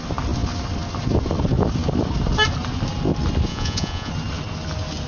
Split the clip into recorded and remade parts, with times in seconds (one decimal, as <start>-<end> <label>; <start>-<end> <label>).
0.0-3.5 recorded; 3.5-4.1 remade; 4.1-5.1 recorded